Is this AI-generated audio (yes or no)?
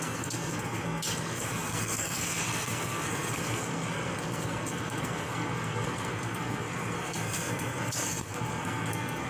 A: yes